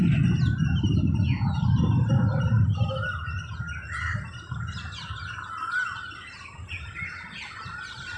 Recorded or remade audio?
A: recorded